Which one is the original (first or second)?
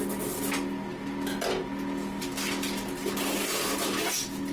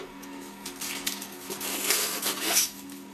first